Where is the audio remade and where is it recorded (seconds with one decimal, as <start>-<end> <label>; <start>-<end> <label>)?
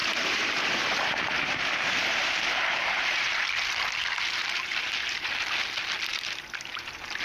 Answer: 0.0-3.4 remade; 3.4-4.4 recorded; 4.4-5.3 remade; 5.3-6.1 recorded; 6.1-7.2 remade